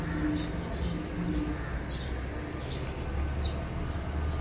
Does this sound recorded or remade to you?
recorded